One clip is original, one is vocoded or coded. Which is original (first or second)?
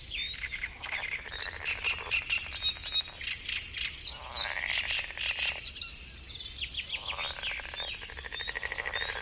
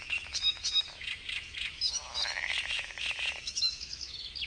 first